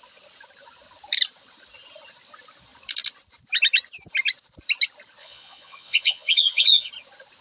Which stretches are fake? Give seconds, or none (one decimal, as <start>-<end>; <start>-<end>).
5.2-6.9